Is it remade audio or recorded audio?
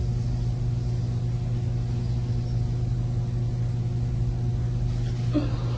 recorded